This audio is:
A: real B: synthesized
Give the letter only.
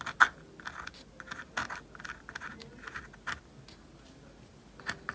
A